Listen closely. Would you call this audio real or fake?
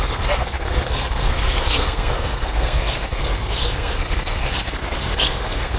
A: fake